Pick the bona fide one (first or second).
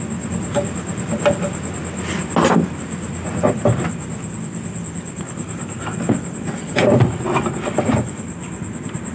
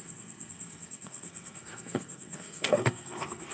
first